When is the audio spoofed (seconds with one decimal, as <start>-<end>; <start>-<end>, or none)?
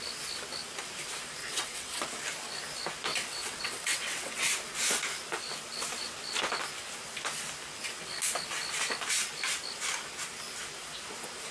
1.4-2.0; 3.1-4.5